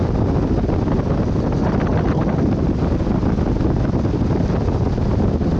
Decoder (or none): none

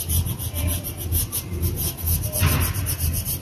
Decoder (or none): none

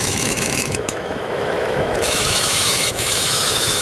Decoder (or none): autoencoder, DAC-VAE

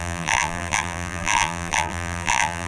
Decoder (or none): vocoder, BigVGAN v2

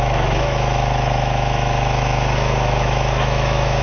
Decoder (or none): autoencoder, DAC-VAE